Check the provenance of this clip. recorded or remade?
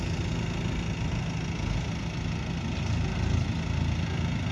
recorded